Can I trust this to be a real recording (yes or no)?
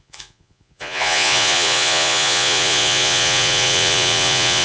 no